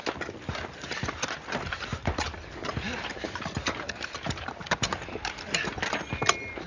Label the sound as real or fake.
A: real